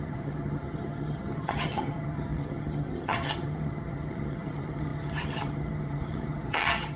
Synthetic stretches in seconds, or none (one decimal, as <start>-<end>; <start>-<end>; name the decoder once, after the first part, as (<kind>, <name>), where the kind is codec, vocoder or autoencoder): 0.0-7.0 (vocoder, HiFi-GAN)

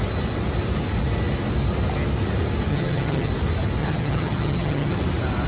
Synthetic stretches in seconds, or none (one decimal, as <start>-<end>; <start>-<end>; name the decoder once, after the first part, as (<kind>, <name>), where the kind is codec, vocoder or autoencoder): 2.7-3.3 (vocoder, HiFi-GAN); 3.8-5.0

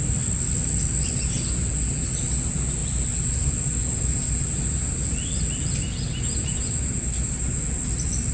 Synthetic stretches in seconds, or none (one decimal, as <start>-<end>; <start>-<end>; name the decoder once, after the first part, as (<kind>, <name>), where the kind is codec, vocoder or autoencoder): none

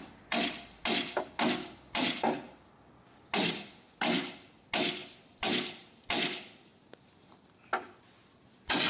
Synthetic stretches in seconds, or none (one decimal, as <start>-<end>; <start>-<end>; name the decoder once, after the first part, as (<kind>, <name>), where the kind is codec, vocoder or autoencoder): none

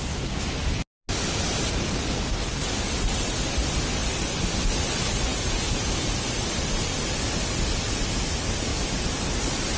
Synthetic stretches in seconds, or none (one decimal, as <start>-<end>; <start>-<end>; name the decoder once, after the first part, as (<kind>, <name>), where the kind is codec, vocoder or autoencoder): 4.0-4.6 (vocoder, BigVGAN v2); 8.7-9.8

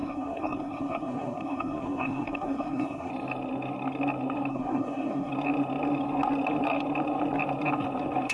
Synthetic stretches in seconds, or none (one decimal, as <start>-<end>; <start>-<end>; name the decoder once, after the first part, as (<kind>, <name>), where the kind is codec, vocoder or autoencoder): 0.0-3.1 (codec, SNAC); 4.5-5.3

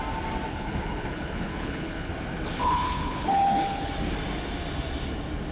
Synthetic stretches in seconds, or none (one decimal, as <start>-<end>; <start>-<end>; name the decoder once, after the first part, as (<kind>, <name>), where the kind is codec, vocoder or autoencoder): 0.5-2.1 (codec, HILCodec); 2.6-3.9

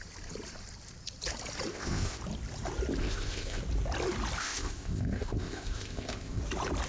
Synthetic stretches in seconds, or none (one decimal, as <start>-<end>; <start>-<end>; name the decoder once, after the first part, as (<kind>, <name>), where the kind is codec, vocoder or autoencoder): 1.7-2.2 (codec, ZipCodec); 3.0-3.6; 4.4-6.4